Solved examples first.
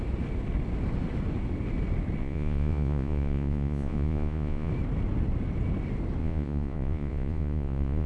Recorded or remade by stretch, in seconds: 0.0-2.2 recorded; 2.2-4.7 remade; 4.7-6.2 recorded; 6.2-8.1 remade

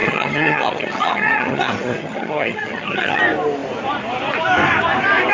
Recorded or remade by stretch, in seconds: 0.0-3.2 remade; 3.2-5.3 recorded

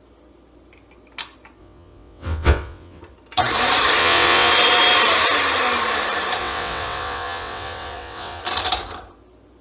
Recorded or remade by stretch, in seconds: 0.0-1.6 recorded; 1.6-3.0 remade; 3.0-4.0 recorded; 4.0-4.5 remade; 4.5-6.4 recorded; 6.4-8.4 remade; 8.4-9.6 recorded

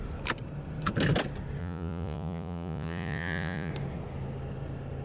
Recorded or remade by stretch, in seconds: 0.0-1.6 recorded; 1.6-3.7 remade; 3.7-5.0 recorded